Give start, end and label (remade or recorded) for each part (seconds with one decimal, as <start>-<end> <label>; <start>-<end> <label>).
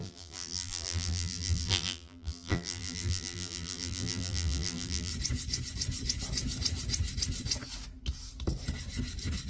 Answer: 0.0-5.1 remade; 5.1-9.5 recorded